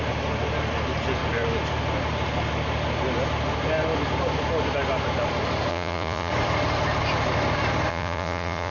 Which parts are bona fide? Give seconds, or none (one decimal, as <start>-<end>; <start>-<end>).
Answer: 0.0-5.7; 6.3-7.9